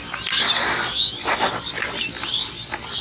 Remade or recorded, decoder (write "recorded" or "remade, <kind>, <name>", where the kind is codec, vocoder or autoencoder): recorded